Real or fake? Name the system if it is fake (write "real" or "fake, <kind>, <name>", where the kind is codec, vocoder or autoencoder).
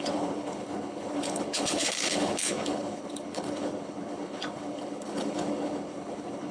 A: fake, codec, HILCodec